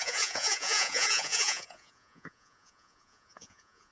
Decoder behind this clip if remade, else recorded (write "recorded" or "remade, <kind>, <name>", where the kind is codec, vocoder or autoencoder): remade, vocoder, Vocos